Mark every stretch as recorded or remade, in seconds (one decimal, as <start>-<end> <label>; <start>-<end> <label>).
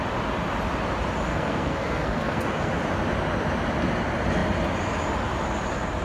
0.0-1.3 recorded; 1.3-2.7 remade; 2.7-6.0 recorded